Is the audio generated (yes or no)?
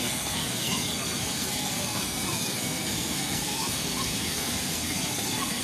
yes